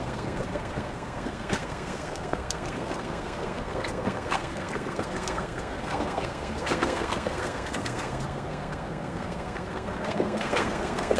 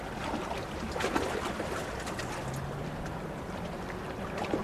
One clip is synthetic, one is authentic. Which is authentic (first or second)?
second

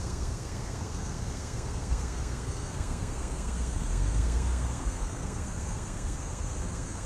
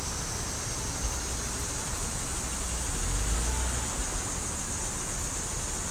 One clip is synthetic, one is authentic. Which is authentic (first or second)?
second